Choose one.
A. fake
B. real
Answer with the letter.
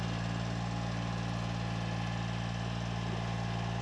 B